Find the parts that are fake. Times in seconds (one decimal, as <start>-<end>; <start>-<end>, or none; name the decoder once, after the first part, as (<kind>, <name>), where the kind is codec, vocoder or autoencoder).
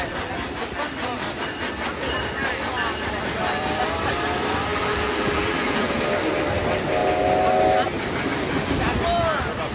4.7-5.9 (vocoder, BigVGAN v2)